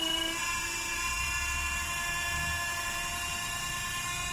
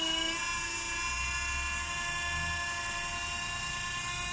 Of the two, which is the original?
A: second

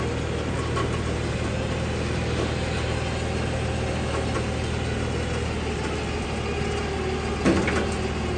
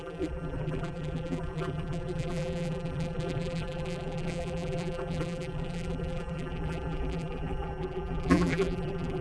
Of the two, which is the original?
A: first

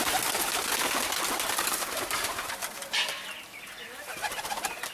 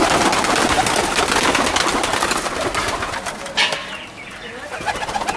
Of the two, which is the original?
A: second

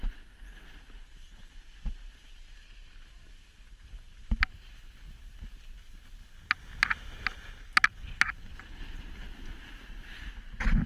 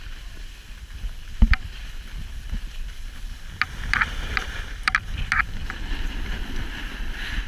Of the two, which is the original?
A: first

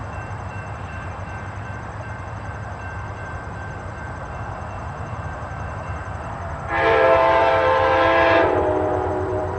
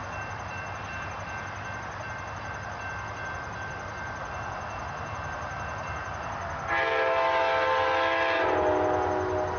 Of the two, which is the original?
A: second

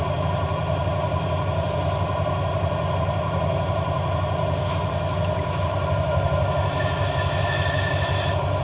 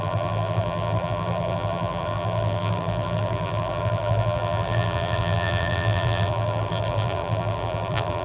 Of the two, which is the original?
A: first